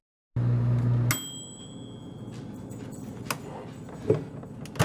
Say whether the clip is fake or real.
real